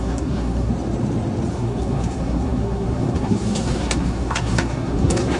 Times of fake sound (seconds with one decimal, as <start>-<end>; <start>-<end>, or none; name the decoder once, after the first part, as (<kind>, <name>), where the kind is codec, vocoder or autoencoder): 0.0-0.7 (codec, SNAC); 1.5-5.4